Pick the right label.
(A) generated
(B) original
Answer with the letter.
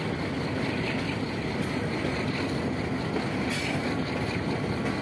B